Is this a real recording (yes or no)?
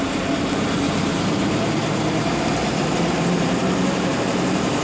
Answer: no